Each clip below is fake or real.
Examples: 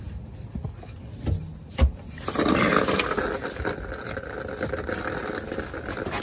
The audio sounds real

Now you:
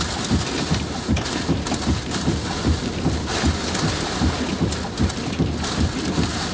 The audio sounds real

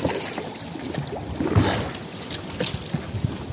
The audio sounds real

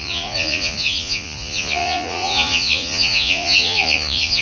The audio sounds fake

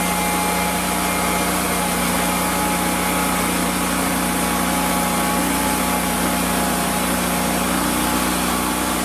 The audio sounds real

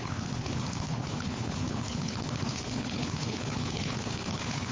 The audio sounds fake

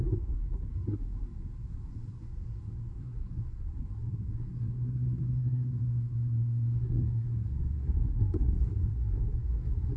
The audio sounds fake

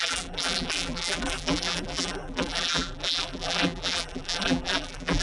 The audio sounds fake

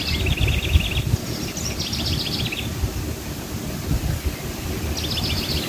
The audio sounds real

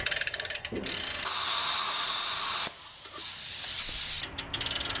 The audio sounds real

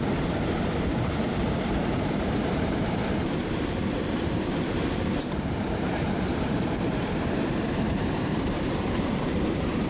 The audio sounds fake